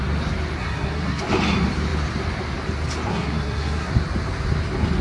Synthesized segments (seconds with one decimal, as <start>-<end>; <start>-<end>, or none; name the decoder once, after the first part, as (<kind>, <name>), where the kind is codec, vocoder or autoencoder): 0.6-1.2 (codec, SNAC); 3.1-3.9